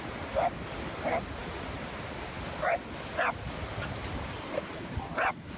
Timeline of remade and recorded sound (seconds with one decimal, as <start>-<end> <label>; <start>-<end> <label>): 0.0-5.6 recorded